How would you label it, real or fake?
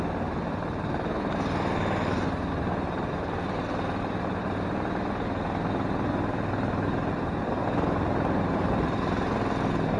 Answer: real